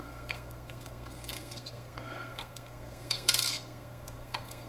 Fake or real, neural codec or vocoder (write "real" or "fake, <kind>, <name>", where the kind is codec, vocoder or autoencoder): fake, codec, SNAC